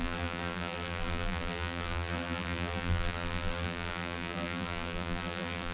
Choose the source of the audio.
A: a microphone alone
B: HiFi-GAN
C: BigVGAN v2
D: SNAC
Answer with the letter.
C